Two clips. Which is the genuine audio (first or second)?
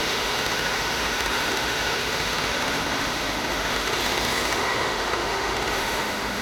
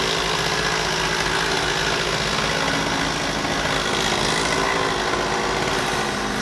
second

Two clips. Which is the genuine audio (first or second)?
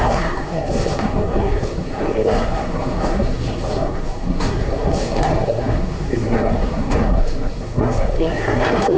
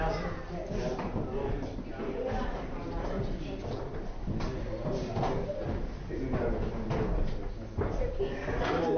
second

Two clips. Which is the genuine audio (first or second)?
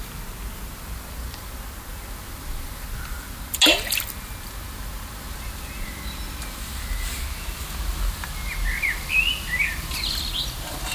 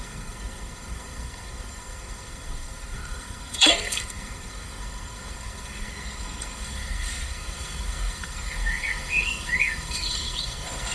first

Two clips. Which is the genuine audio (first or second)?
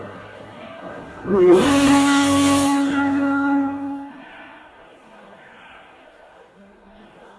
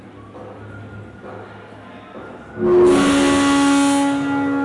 second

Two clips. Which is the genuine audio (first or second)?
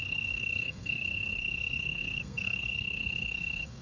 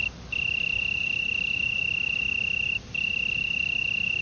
second